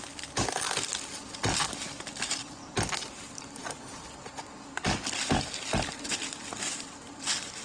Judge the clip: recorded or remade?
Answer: recorded